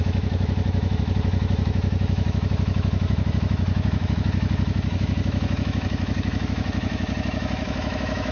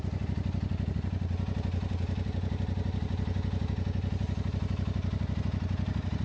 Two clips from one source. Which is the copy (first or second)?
first